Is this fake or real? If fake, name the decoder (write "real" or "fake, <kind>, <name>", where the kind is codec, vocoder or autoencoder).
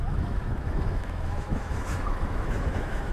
fake, autoencoder, DAC-VAE